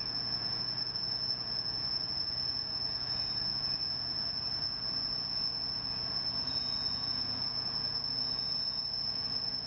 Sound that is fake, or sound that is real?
fake